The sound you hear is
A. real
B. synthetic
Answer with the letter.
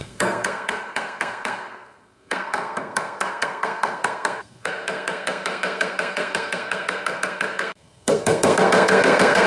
B